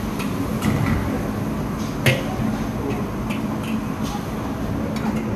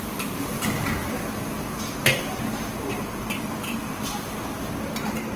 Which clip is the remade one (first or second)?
second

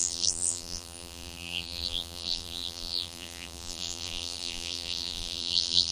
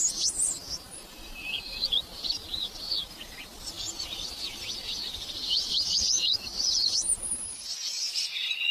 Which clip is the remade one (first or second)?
first